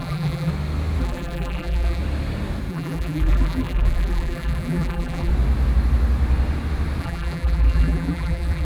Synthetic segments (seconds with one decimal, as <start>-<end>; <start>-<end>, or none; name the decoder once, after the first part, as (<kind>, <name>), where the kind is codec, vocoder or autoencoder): 0.0-0.5 (vocoder, BigVGAN v2); 1.0-2.0; 2.7-5.3; 7.0-8.6